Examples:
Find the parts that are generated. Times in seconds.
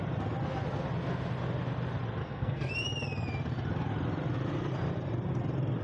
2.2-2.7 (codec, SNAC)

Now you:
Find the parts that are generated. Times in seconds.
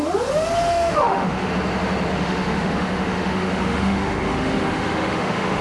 0.7-1.5 (autoencoder, DAC-VAE); 2.1-5.6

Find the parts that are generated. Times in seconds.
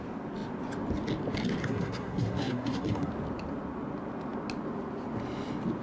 1.6-3.1 (codec, SNAC)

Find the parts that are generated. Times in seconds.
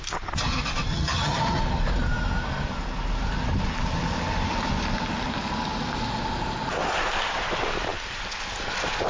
0.9-1.6 (vocoder, HiFi-GAN)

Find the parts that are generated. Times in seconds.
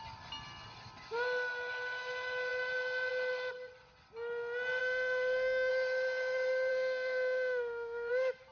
4.8-5.7 (autoencoder, DAC-VAE); 6.7-8.1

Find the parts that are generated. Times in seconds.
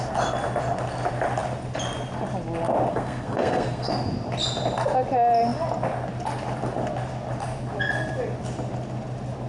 2.9-3.9 (codec, SNAC)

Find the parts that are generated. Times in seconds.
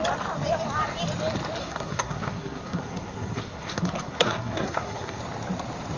1.6-5.2 (codec, SNAC)